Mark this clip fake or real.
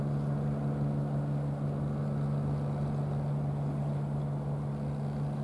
real